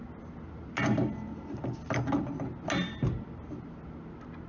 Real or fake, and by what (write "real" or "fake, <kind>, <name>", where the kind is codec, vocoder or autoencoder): real